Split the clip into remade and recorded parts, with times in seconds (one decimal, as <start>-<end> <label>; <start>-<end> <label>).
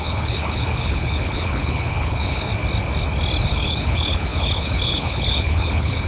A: 0.0-2.5 remade; 2.5-3.4 recorded; 3.4-6.1 remade